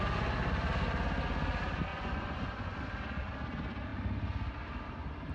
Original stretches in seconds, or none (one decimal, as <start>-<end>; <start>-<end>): 0.0-1.9; 2.8-5.3